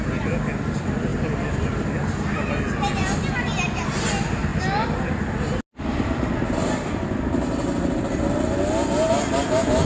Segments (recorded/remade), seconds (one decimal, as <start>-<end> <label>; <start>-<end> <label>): 0.0-9.9 recorded